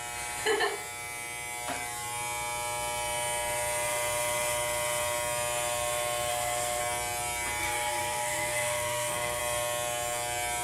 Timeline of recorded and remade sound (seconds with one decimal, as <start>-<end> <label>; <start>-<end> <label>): 0.0-6.3 recorded; 6.3-6.8 remade; 6.8-7.6 recorded; 7.6-9.4 remade; 9.4-10.6 recorded

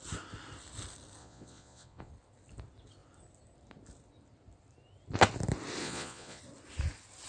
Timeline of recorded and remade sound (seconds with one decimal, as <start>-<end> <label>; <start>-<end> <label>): 0.0-1.2 recorded; 1.2-2.1 remade; 2.1-5.8 recorded; 5.8-6.4 remade; 6.4-7.3 recorded

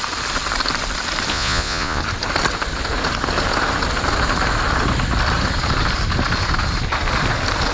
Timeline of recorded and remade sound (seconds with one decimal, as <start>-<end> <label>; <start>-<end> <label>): 0.0-1.3 recorded; 1.3-2.0 remade; 2.0-7.7 recorded

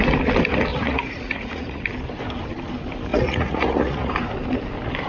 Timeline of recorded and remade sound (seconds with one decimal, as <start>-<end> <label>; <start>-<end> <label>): 0.0-0.7 recorded; 0.7-1.8 remade; 1.8-3.1 recorded; 3.1-4.1 remade; 4.1-5.1 recorded

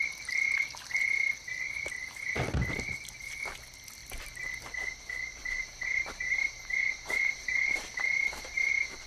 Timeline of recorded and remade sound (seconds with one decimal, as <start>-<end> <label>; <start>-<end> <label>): 0.0-5.3 recorded; 5.3-8.7 remade; 8.7-9.1 recorded

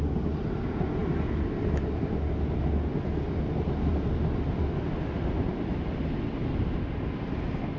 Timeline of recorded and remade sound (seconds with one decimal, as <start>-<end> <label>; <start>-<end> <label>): 0.0-7.8 recorded

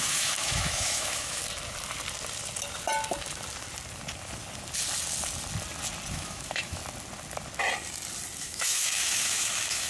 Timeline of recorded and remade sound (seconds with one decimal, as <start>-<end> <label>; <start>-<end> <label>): 0.0-1.4 remade; 1.4-6.1 recorded; 6.1-6.8 remade; 6.8-8.4 recorded; 8.4-9.9 remade

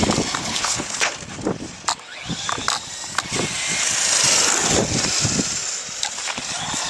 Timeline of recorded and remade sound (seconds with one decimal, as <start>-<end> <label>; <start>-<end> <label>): 0.0-0.4 recorded; 0.4-1.1 remade; 1.1-6.9 recorded